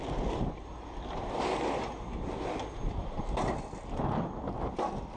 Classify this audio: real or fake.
real